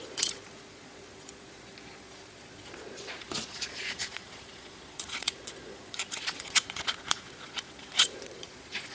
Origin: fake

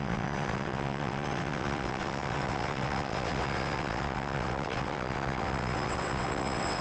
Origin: fake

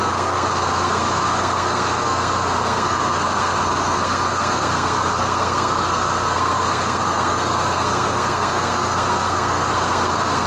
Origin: fake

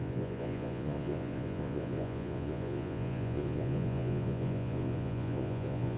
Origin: fake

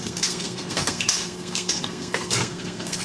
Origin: fake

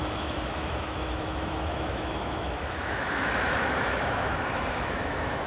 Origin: fake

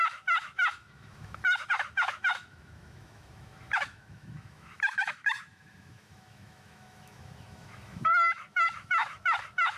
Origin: fake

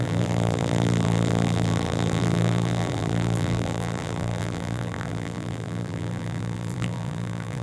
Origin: fake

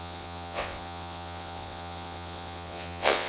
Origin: fake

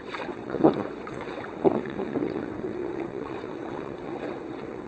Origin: fake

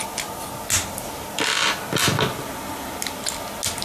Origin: real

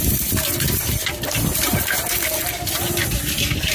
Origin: real